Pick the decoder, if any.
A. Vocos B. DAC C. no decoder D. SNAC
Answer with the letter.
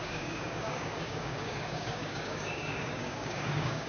B